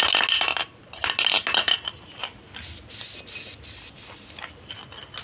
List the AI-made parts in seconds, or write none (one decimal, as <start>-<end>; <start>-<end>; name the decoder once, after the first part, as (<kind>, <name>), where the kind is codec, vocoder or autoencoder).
none